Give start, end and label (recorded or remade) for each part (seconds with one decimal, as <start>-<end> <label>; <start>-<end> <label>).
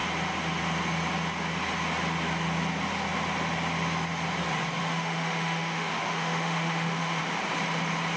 0.0-4.8 recorded; 4.8-7.2 remade; 7.2-8.2 recorded